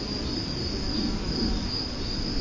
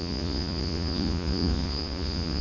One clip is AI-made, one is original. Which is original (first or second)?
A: first